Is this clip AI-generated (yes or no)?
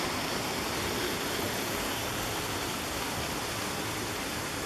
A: no